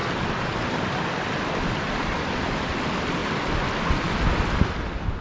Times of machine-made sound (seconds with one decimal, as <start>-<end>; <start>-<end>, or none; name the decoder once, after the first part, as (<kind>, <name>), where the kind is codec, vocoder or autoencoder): none